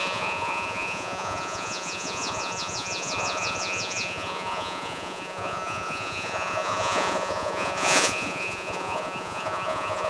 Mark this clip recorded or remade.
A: remade